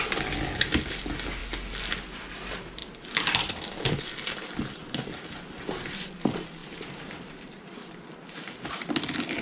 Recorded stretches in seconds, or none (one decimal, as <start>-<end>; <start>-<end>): 0.0-2.8; 4.0-6.6